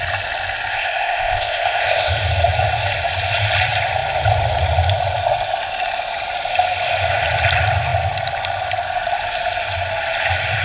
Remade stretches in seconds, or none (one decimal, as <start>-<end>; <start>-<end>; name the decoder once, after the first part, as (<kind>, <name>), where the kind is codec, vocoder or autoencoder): 0.7-2.1 (codec, ZipCodec)